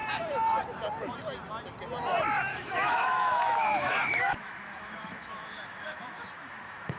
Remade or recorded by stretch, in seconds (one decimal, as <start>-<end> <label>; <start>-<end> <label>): 0.0-2.5 recorded; 2.5-7.0 remade